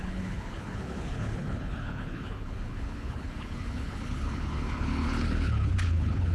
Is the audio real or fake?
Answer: fake